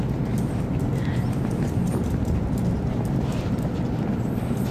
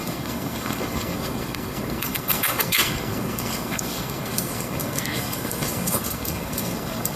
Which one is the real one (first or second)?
first